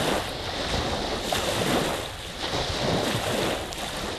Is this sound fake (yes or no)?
no